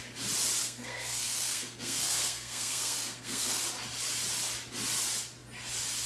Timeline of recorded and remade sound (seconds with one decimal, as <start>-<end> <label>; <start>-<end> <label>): 0.0-0.6 recorded; 0.6-3.6 remade; 3.6-6.1 recorded